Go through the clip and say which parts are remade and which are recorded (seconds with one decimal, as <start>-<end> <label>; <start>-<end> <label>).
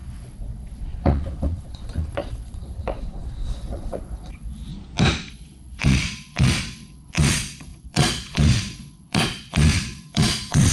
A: 0.0-4.7 remade; 4.7-5.3 recorded; 5.3-10.7 remade